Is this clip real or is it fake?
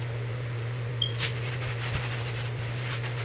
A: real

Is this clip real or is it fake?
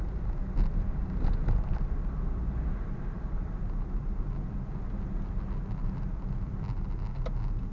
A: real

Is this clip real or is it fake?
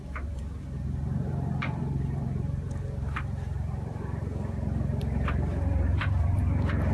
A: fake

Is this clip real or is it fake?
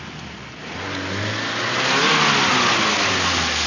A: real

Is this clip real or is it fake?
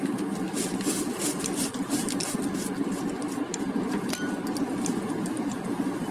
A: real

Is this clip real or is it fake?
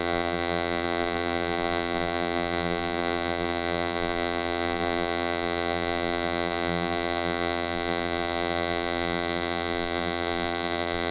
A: fake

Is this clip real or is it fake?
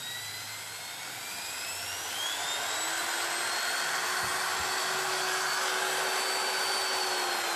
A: real